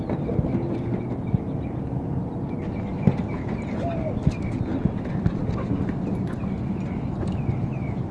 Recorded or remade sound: recorded